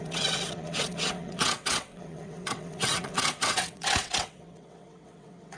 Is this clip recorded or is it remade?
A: remade